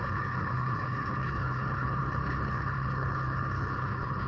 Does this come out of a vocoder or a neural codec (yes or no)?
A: yes